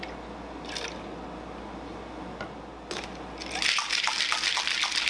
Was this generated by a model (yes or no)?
no